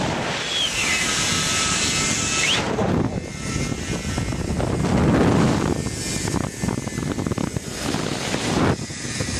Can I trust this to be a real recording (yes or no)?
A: yes